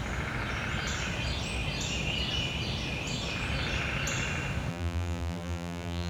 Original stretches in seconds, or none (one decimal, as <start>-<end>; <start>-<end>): 0.0-4.7